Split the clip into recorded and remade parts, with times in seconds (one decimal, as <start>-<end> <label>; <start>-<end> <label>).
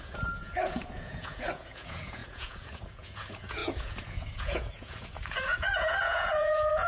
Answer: 0.0-6.9 remade